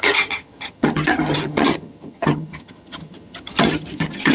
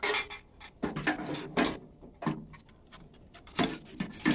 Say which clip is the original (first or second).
second